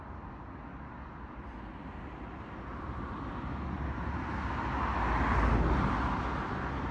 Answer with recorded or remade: recorded